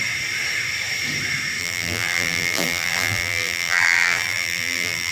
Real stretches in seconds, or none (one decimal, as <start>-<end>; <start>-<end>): 0.0-1.6